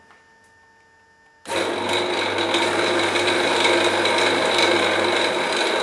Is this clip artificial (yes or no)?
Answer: no